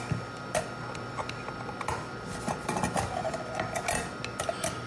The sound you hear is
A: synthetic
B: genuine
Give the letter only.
B